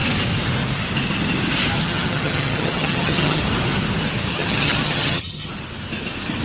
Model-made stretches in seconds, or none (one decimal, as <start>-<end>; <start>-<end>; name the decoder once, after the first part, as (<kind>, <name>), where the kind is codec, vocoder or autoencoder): 1.8-3.4 (vocoder, HiFi-GAN); 4.3-5.5